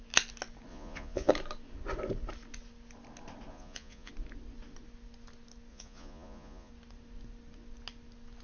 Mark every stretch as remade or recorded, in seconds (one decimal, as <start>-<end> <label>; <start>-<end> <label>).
0.0-0.7 recorded; 0.7-1.3 remade; 1.3-3.5 recorded; 3.5-4.1 remade; 4.1-5.7 recorded; 5.7-6.7 remade; 6.7-8.4 recorded